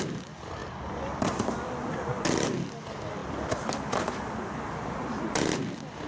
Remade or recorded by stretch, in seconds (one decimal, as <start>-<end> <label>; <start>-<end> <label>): 0.0-6.1 recorded